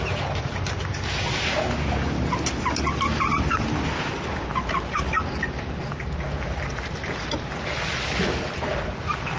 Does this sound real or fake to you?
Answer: real